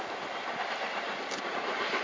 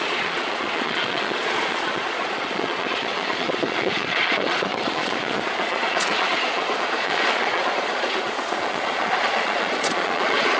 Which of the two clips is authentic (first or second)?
first